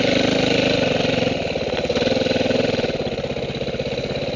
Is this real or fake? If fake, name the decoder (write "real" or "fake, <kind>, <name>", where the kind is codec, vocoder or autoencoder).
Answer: real